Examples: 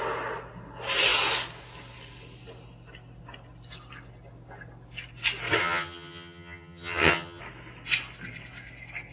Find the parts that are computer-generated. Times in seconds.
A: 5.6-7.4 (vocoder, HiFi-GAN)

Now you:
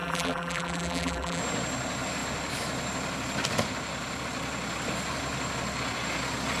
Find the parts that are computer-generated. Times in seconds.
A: 0.0-1.4 (vocoder, BigVGAN v2)

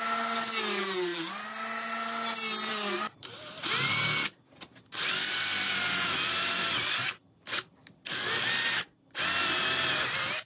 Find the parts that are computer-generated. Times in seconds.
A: none